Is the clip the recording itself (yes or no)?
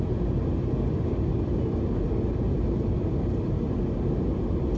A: yes